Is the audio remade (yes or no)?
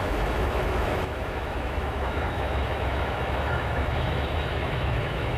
yes